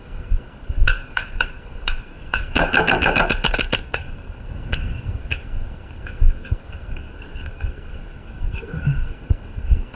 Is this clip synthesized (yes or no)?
yes